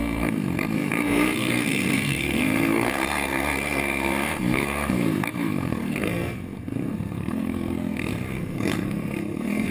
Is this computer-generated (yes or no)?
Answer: yes